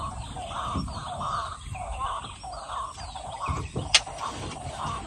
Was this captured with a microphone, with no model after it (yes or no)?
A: yes